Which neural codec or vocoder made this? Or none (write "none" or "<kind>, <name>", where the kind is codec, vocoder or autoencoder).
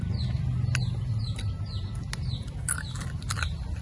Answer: none